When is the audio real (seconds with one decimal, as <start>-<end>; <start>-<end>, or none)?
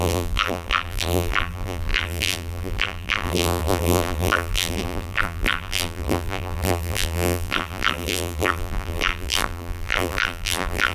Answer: none